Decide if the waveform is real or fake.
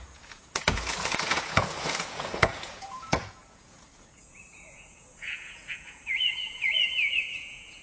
fake